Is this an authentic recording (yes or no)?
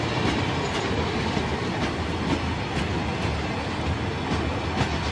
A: yes